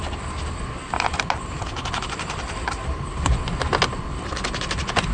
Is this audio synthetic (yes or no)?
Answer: no